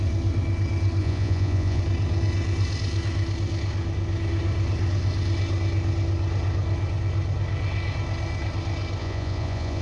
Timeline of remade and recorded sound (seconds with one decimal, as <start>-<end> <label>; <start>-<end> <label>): 0.0-1.0 recorded; 1.0-1.8 remade; 1.8-9.0 recorded; 9.0-9.8 remade